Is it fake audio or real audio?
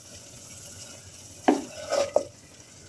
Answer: fake